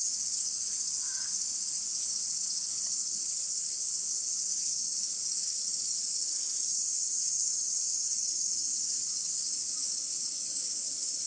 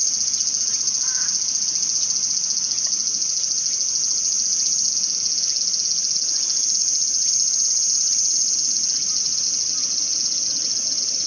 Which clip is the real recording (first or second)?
second